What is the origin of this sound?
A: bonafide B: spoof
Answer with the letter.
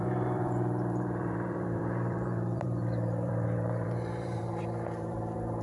B